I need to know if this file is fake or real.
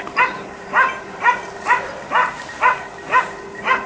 real